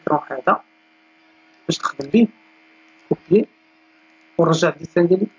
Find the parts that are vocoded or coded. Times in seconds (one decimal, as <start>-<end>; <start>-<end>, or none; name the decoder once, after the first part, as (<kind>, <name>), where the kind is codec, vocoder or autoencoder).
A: 1.2-1.7 (codec, DAC); 3.0-4.0